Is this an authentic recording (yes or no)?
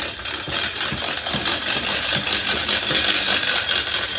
no